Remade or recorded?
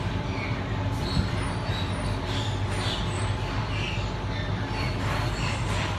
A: recorded